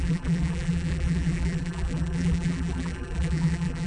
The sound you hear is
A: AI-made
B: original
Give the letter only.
A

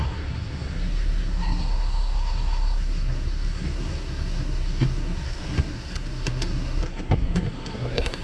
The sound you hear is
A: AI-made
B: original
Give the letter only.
A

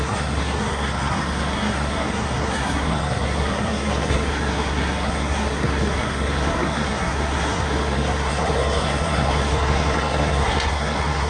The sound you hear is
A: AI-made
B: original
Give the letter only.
A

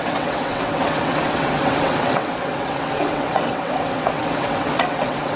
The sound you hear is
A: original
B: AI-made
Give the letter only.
B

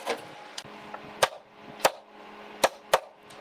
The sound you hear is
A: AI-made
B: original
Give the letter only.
B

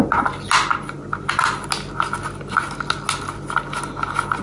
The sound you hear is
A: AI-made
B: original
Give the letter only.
B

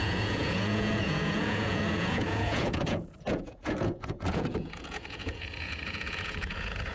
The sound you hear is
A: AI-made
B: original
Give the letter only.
A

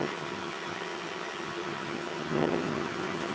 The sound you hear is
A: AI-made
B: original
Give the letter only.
A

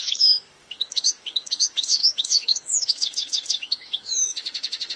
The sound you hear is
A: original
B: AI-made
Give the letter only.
B